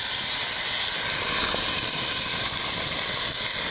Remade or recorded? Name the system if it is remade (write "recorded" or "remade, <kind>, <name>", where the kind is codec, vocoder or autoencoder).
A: recorded